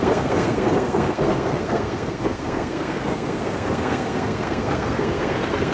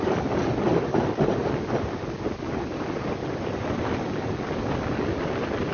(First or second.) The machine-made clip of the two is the first